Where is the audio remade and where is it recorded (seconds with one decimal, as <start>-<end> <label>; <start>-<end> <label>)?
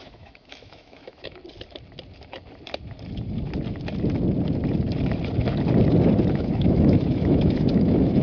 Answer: 0.0-1.4 remade; 1.4-6.3 recorded; 6.3-8.2 remade